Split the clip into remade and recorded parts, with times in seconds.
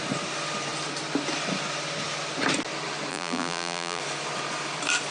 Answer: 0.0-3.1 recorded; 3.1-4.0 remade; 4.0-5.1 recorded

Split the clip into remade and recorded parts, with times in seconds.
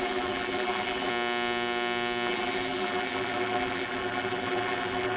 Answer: 0.0-1.1 remade; 1.1-2.3 recorded; 2.3-5.2 remade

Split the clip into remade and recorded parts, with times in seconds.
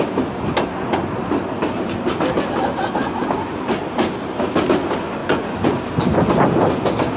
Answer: 0.0-5.2 recorded; 5.2-5.8 remade; 5.8-7.2 recorded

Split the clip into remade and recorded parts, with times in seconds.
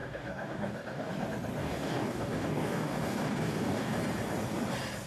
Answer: 0.0-1.1 remade; 1.1-1.6 recorded; 1.6-4.0 remade; 4.0-5.1 recorded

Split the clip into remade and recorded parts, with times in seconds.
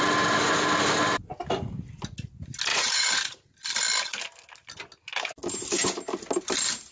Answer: 0.0-2.7 recorded; 2.7-3.5 remade; 3.5-6.9 recorded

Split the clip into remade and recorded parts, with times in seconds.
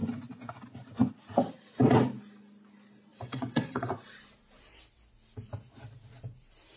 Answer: 0.0-3.1 recorded; 3.1-3.9 remade; 3.9-6.8 recorded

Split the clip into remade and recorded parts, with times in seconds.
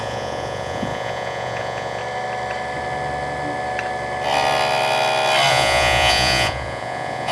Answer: 0.0-2.0 remade; 2.0-5.5 recorded; 5.5-7.3 remade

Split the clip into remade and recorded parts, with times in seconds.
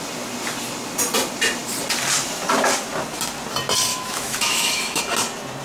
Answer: 0.0-3.9 recorded; 3.9-5.0 remade; 5.0-5.6 recorded